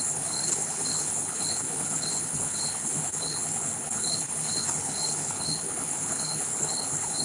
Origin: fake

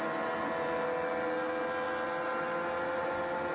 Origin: real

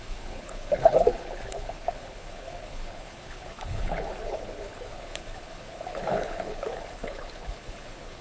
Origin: fake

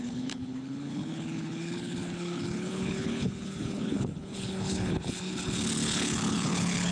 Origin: fake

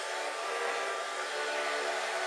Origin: real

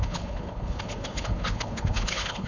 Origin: fake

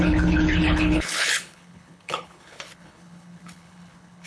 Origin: fake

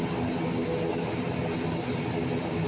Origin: real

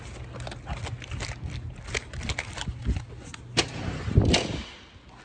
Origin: real